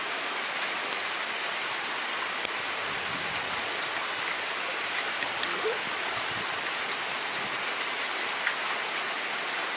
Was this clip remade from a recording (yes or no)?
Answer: no